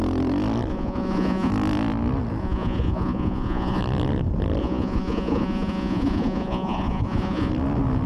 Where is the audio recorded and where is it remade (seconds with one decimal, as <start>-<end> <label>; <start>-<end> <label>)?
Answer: 0.0-0.7 recorded; 0.7-1.5 remade; 1.5-2.4 recorded; 2.4-3.8 remade; 3.8-4.6 recorded; 4.6-7.5 remade; 7.5-8.1 recorded